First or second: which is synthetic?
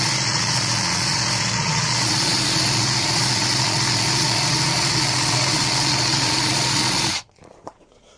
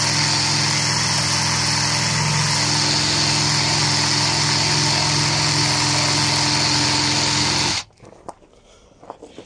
first